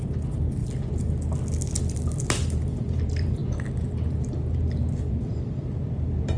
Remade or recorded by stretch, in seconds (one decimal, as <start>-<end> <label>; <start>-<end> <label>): 0.0-0.6 remade; 0.6-1.9 recorded; 1.9-3.4 remade; 3.4-5.0 recorded; 5.0-6.4 remade

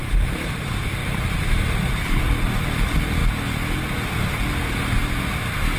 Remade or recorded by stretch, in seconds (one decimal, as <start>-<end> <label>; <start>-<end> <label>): 0.0-0.5 recorded; 0.5-1.0 remade; 1.0-1.8 recorded; 1.8-3.2 remade; 3.2-5.8 recorded

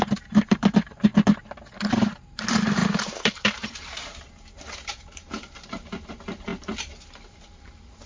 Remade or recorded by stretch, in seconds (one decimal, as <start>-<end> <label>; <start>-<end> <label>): 0.0-6.5 remade; 6.5-7.0 recorded; 7.0-8.1 remade